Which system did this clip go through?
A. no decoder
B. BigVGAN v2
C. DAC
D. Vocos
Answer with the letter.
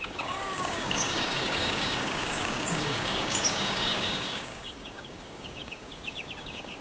C